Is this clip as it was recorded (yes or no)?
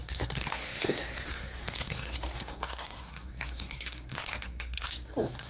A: no